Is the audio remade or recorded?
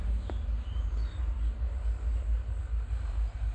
recorded